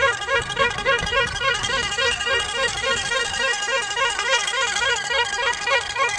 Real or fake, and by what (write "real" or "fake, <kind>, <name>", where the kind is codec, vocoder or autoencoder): fake, codec, SNAC